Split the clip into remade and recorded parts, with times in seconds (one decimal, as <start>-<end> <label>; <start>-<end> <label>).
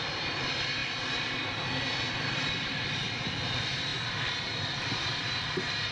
0.0-0.8 remade; 0.8-2.1 recorded; 2.1-5.9 remade